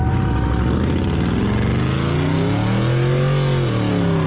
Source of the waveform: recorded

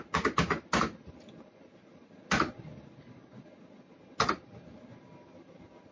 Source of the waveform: recorded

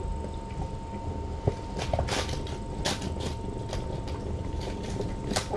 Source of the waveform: recorded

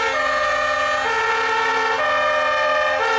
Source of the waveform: recorded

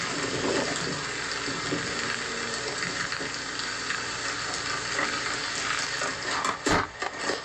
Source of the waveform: recorded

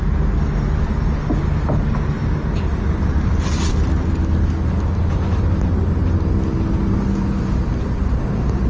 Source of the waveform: recorded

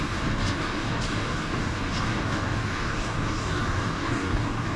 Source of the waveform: remade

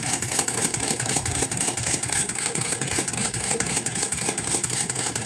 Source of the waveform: remade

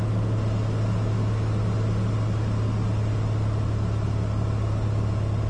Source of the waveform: recorded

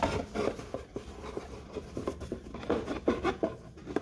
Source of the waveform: recorded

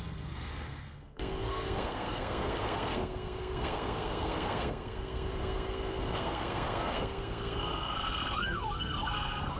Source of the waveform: remade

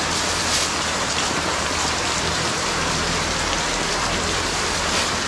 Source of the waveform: remade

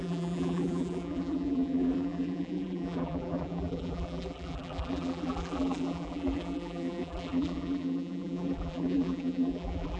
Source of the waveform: remade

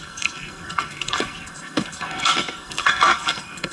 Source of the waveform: remade